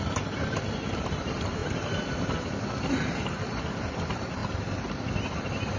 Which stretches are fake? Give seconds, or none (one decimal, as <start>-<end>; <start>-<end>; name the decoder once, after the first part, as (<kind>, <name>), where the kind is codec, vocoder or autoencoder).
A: none